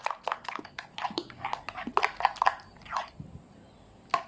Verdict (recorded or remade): recorded